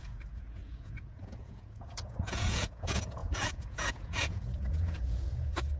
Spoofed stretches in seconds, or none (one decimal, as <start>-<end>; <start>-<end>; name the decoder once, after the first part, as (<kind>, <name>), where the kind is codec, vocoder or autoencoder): 0.0-5.8 (vocoder, Vocos)